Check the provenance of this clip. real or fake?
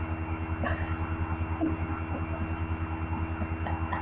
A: real